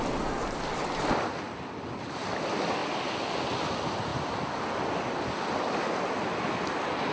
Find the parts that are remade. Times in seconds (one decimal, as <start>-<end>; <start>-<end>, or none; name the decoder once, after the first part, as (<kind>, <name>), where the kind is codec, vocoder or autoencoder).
none

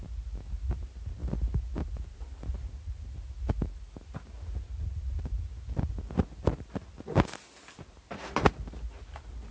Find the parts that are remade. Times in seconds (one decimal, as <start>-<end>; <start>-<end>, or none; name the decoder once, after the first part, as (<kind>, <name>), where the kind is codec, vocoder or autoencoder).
none

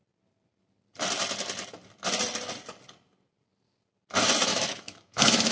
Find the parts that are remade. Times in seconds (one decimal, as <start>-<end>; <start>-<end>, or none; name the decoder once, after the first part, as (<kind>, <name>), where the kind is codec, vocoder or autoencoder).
4.5-5.5 (autoencoder, DAC-VAE)

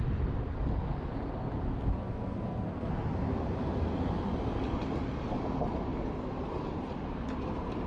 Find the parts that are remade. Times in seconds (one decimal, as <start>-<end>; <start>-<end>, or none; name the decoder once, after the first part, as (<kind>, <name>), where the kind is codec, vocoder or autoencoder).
1.9-2.9 (codec, SNAC)